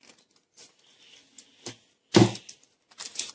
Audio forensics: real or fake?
real